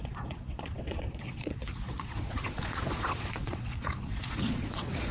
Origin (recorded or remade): remade